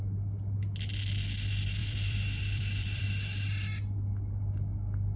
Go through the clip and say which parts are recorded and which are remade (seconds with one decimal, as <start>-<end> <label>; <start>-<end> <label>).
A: 0.0-1.8 recorded; 1.8-3.0 remade; 3.0-5.2 recorded